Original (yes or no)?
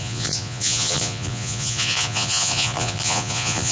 no